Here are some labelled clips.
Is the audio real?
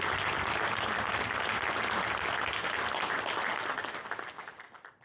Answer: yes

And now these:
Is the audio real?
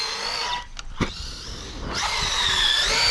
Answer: yes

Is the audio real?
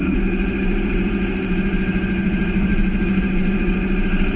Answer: no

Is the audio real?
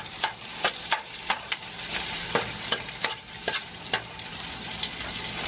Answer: no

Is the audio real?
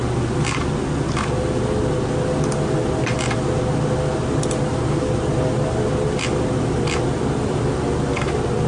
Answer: yes